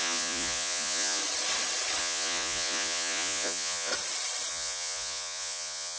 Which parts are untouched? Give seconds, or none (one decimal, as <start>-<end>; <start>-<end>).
1.2-2.0; 3.9-4.5